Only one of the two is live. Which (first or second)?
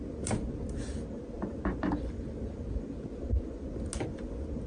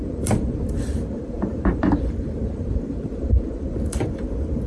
first